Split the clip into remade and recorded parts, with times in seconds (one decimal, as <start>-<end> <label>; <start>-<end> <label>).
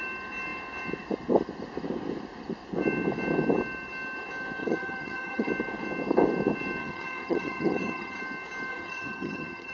0.0-4.6 recorded; 4.6-5.5 remade; 5.5-6.8 recorded; 6.8-8.2 remade; 8.2-8.7 recorded; 8.7-9.7 remade